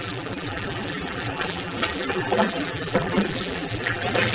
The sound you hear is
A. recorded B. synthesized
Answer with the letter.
B